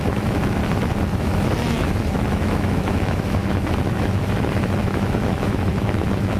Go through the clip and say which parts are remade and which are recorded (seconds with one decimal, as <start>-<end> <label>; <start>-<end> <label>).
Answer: 0.0-0.6 remade; 0.6-1.2 recorded; 1.2-6.4 remade